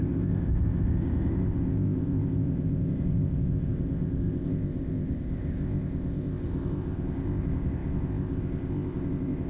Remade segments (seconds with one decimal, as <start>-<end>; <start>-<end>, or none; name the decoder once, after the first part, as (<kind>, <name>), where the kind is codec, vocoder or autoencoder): 0.0-9.5 (codec, ZipCodec)